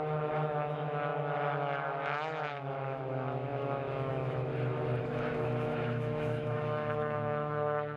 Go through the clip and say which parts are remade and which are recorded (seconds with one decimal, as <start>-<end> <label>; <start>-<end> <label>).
0.0-4.5 remade; 4.5-5.0 recorded; 5.0-8.0 remade